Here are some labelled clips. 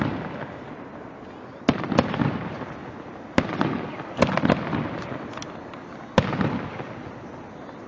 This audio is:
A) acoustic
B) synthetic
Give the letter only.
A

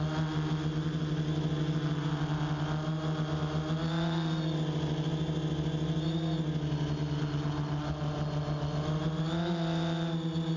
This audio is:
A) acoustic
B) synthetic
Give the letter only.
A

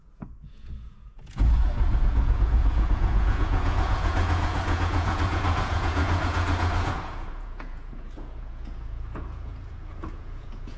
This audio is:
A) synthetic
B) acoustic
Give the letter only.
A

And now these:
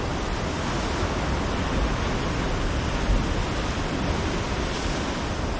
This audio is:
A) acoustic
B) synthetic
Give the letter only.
A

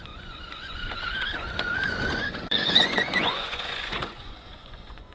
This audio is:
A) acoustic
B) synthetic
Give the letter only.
B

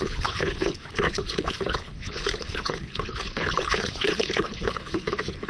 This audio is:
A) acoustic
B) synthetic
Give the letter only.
B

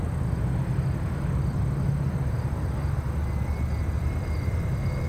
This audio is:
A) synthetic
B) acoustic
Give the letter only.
B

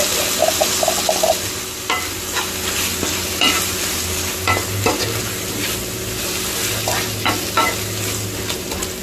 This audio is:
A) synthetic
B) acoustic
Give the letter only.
B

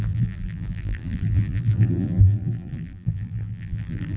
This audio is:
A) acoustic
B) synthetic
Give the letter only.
B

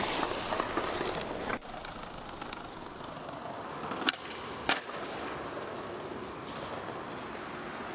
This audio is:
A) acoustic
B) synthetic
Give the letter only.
A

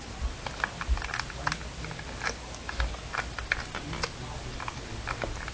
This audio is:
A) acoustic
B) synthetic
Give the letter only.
A